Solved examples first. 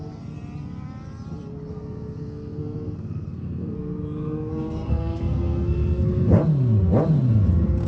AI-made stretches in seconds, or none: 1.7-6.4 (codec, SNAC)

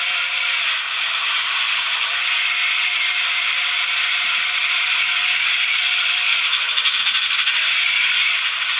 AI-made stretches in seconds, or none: 6.3-7.0 (autoencoder, DAC-VAE)

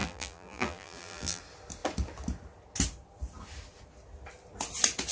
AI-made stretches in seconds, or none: 0.0-1.4 (vocoder, BigVGAN v2)